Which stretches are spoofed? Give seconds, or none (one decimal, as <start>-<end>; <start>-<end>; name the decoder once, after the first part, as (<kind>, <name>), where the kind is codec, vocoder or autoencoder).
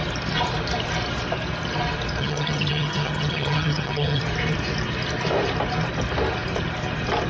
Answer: 2.2-4.2 (vocoder, HiFi-GAN)